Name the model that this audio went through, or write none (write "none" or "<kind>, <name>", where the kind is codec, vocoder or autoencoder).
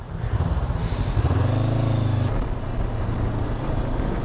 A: none